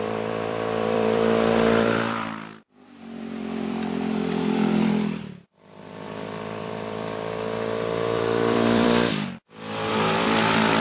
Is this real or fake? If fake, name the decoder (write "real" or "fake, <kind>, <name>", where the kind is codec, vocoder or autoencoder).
fake, vocoder, BigVGAN v2